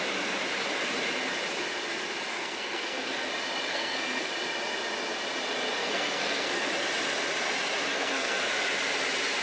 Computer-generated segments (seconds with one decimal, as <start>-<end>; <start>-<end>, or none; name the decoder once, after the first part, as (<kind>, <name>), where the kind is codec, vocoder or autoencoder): 2.3-3.3 (codec, SNAC); 3.7-4.3; 5.8-6.7; 7.9-8.5